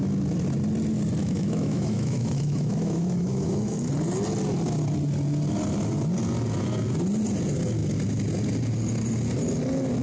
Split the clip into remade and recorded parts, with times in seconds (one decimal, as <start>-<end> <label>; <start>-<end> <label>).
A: 0.0-1.2 recorded; 1.2-3.9 remade; 3.9-10.0 recorded